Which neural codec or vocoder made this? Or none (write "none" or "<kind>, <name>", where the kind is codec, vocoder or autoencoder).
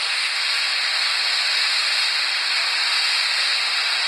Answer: none